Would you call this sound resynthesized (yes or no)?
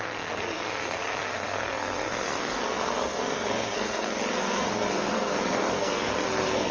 yes